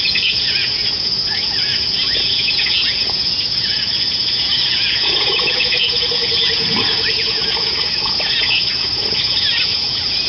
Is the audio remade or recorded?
remade